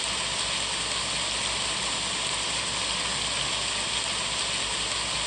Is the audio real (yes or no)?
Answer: yes